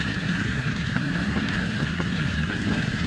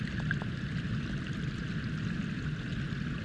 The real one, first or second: second